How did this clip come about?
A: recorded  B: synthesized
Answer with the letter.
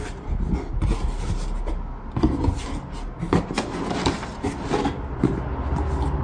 A